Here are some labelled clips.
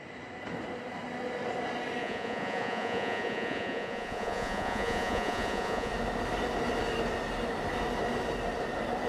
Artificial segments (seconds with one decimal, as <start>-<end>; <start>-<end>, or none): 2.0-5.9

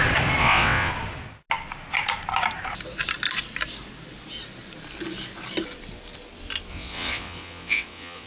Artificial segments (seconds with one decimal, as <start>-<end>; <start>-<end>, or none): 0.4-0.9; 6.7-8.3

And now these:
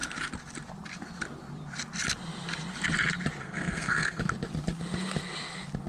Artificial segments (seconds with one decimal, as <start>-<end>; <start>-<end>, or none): 3.4-4.2

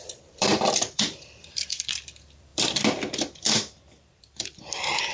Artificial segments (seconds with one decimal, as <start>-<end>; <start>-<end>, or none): 0.0-5.1